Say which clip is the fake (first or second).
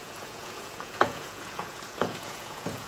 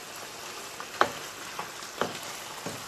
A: first